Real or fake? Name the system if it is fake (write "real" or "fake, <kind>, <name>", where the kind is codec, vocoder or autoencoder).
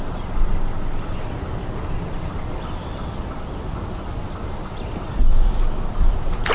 real